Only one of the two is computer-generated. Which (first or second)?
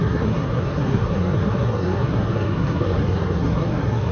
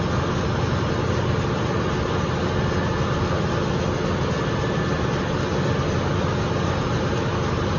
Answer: first